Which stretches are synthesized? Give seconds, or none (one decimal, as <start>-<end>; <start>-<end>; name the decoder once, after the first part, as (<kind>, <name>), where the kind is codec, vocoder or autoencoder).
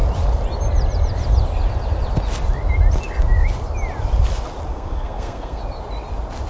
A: 4.7-5.6 (codec, SNAC)